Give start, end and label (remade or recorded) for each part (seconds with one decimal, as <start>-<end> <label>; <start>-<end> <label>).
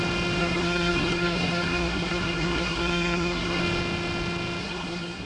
0.0-0.4 recorded; 0.4-3.6 remade; 3.6-4.6 recorded; 4.6-5.3 remade